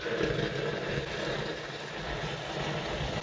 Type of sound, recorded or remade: recorded